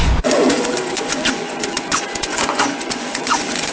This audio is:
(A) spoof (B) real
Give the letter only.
A